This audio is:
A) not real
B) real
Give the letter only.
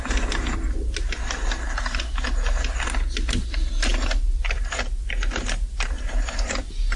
B